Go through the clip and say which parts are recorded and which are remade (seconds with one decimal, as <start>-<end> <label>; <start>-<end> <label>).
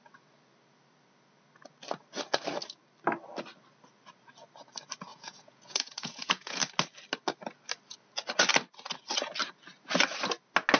0.0-5.1 recorded; 5.1-6.6 remade; 6.6-10.8 recorded